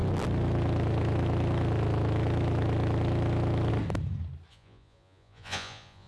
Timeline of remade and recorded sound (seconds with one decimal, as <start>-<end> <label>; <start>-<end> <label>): 0.0-4.5 recorded; 4.5-6.1 remade